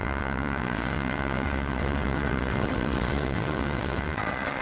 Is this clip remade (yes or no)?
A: yes